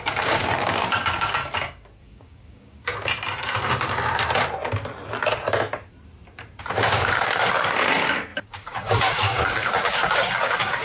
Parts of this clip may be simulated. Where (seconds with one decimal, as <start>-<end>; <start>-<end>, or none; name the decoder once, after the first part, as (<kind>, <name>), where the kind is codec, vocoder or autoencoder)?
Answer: 0.0-1.4 (codec, DAC); 2.0-2.9; 6.6-10.8